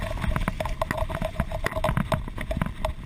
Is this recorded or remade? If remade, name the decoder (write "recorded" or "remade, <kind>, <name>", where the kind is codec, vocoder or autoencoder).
recorded